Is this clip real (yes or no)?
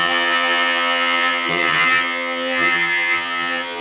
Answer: no